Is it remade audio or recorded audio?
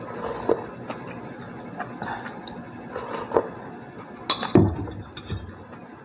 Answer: recorded